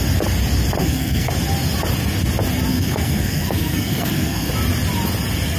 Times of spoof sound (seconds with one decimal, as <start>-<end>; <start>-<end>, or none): 0.8-1.3; 2.7-4.5